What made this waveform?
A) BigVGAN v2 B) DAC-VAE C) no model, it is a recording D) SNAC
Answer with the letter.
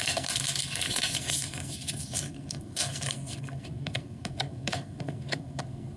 D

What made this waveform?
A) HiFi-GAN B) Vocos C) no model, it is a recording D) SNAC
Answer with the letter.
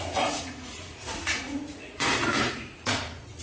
B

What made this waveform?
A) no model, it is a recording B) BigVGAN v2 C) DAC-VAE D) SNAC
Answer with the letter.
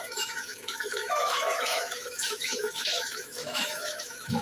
C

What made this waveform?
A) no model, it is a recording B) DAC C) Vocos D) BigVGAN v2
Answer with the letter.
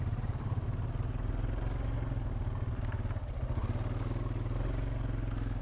A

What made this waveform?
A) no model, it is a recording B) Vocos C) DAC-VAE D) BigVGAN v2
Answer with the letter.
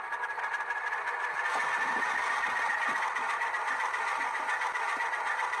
A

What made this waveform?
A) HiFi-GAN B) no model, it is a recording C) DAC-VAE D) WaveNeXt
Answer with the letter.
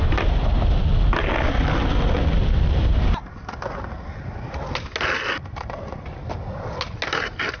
B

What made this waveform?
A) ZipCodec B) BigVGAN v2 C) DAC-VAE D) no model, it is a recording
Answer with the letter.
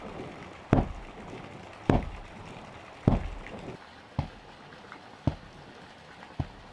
D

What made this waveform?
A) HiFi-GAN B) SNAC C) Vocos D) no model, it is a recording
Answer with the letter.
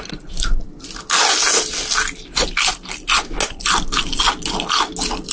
D